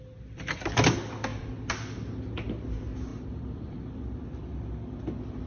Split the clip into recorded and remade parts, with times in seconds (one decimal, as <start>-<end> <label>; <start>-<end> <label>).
0.0-3.1 recorded; 3.1-3.8 remade; 3.8-5.5 recorded